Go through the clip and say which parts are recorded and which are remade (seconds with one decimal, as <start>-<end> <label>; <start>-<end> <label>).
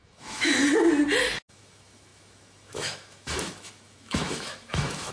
0.0-0.6 remade; 0.6-1.5 recorded; 1.5-5.1 remade